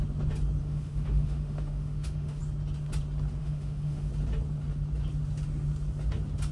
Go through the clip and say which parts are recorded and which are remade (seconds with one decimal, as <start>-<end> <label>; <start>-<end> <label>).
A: 0.0-0.6 recorded; 0.6-2.4 remade; 2.4-3.4 recorded; 3.4-4.1 remade; 4.1-6.5 recorded